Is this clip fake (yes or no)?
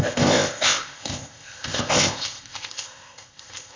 yes